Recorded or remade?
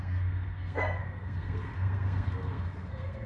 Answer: remade